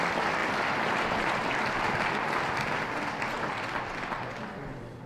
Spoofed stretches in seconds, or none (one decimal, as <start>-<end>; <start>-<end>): 0.0-0.4; 3.5-5.1